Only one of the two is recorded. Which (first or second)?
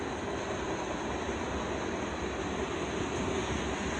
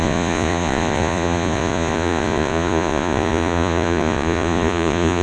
first